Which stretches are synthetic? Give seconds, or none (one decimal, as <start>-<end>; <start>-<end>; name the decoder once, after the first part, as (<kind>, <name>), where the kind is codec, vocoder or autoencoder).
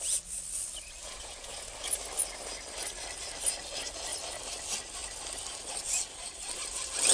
1.0-1.7 (vocoder, Vocos)